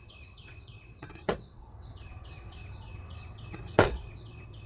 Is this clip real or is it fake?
fake